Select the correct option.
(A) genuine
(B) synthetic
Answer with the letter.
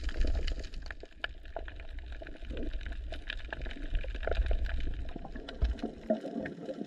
A